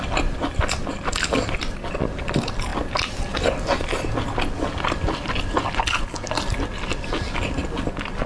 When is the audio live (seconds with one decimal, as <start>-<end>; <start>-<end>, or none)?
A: 0.0-8.3